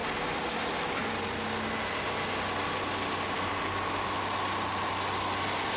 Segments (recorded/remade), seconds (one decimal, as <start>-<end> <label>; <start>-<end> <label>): 0.0-5.8 recorded